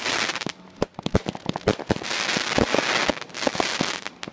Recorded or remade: recorded